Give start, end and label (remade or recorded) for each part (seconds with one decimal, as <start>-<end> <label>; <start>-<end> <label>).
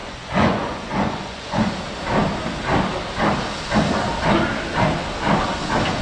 0.0-1.7 remade; 1.7-6.0 recorded